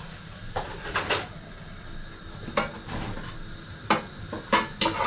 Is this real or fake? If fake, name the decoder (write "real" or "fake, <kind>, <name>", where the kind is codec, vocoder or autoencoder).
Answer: real